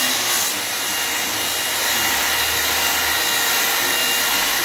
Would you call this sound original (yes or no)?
yes